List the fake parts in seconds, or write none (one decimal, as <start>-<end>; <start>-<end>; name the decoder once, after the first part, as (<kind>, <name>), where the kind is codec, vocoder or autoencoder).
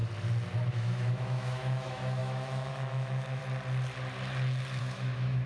0.7-3.4 (autoencoder, DAC-VAE); 4.8-5.5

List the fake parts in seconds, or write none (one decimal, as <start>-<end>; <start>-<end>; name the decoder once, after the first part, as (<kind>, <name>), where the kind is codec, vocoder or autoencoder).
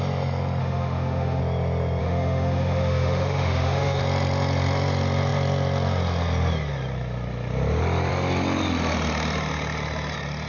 0.6-1.4 (autoencoder, DAC-VAE); 2.0-4.0